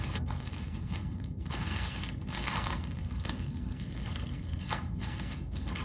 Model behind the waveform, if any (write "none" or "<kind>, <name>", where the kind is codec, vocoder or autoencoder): codec, SNAC